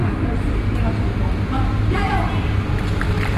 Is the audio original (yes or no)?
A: yes